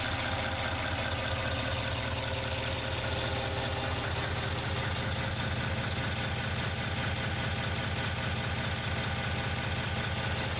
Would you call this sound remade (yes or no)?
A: no